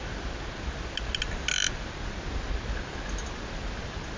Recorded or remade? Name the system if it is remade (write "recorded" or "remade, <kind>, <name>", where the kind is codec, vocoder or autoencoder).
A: recorded